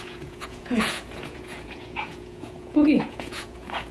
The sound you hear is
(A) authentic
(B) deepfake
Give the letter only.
B